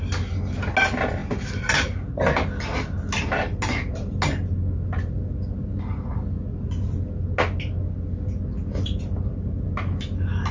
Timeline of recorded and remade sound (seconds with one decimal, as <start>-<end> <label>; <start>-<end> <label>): 0.0-10.5 recorded